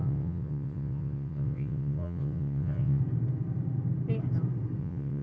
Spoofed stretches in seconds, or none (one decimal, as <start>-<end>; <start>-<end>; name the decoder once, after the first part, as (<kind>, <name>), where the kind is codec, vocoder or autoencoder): 0.0-3.0 (vocoder, WaveNeXt); 4.8-5.2